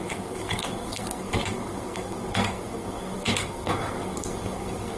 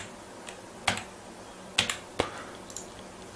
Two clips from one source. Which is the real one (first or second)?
second